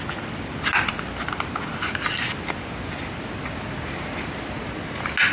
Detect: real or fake real